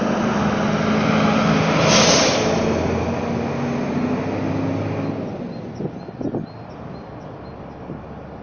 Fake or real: real